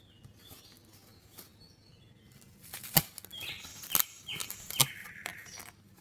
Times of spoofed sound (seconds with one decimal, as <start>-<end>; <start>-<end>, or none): none